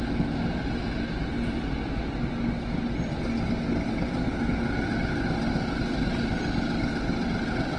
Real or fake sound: real